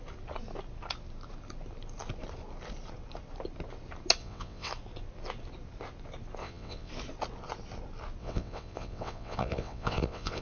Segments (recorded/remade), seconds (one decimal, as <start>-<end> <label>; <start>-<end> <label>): 0.0-4.2 recorded; 4.2-4.7 remade; 4.7-6.4 recorded; 6.4-6.9 remade; 6.9-8.2 recorded; 8.2-10.4 remade